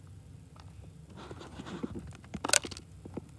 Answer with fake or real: real